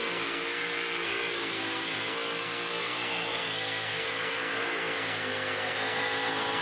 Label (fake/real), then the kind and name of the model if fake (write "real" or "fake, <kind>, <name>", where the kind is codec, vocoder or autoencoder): fake, codec, SNAC